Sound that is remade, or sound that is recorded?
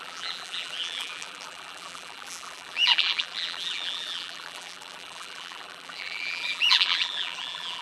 remade